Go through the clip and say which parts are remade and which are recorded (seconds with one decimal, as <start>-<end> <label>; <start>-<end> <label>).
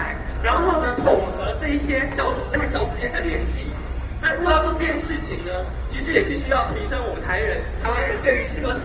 0.0-1.6 remade; 1.6-2.2 recorded; 2.2-6.8 remade; 6.8-7.8 recorded; 7.8-8.8 remade